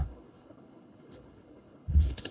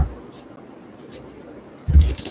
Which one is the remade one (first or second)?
first